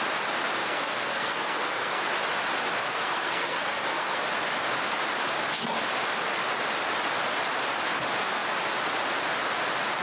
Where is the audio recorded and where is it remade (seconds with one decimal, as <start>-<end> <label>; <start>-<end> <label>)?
0.0-0.6 recorded; 0.6-2.0 remade; 2.0-2.8 recorded; 2.8-4.2 remade; 4.2-10.0 recorded